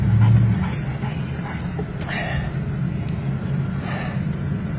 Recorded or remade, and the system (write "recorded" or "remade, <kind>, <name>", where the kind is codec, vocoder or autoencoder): recorded